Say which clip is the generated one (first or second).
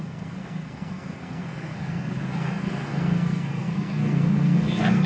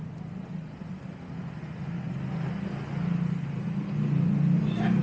first